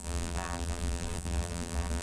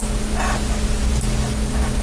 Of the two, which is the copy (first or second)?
first